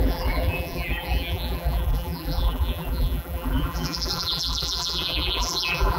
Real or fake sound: fake